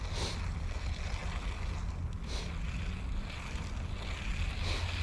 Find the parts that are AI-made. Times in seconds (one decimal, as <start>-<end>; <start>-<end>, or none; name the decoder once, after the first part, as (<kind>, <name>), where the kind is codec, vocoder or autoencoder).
none